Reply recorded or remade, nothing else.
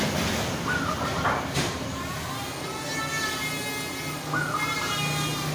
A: recorded